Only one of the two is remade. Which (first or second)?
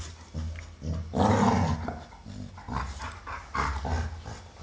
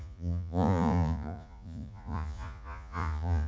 second